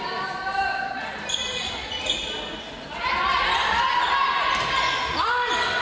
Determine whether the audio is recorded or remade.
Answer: recorded